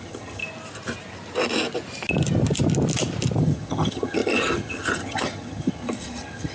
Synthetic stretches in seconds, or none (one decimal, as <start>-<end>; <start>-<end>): 0.0-0.4; 3.4-6.5